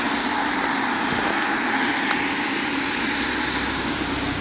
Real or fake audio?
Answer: real